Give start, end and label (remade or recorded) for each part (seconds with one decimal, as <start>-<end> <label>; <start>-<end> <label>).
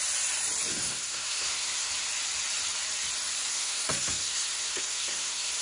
0.0-0.7 recorded; 0.7-1.9 remade; 1.9-3.5 recorded; 3.5-5.6 remade